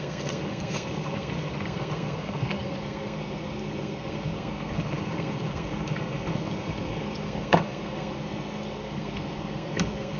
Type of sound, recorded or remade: remade